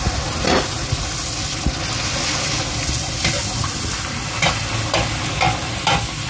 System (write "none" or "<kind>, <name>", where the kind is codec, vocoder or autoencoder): none